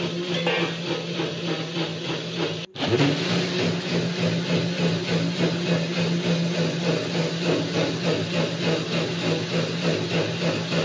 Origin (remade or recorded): recorded